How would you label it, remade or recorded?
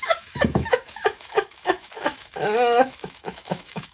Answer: remade